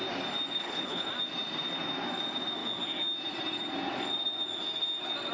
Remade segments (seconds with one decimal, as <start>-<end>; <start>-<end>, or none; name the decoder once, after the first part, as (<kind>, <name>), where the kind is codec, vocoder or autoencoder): 0.6-1.1 (codec, HILCodec)